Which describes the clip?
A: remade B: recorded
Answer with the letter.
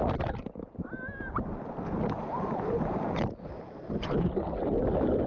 B